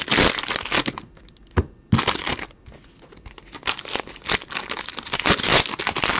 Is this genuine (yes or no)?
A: yes